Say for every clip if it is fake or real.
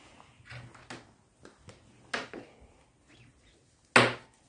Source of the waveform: real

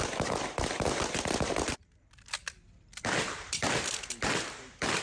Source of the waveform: fake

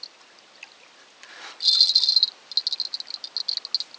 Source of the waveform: real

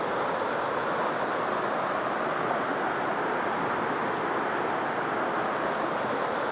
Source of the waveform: real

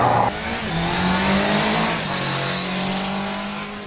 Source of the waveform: real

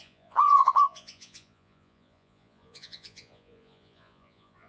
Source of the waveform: fake